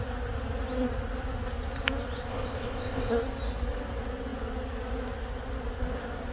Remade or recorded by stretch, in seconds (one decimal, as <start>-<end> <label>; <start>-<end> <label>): 0.0-2.3 recorded; 2.3-3.1 remade; 3.1-6.3 recorded